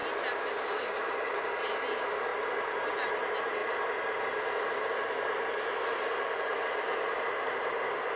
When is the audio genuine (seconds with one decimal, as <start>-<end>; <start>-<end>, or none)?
0.0-8.2

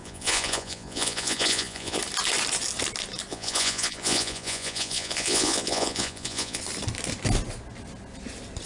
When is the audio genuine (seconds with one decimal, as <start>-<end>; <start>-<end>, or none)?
2.0-3.3; 6.6-8.7

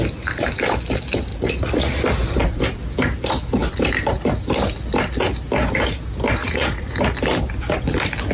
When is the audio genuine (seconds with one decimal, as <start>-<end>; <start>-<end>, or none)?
0.0-1.3; 2.0-6.4; 7.0-8.3